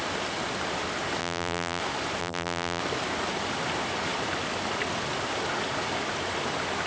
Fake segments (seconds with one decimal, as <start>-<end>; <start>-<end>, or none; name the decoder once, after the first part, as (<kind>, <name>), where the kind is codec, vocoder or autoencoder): 1.2-1.8 (vocoder, BigVGAN v2); 2.2-2.8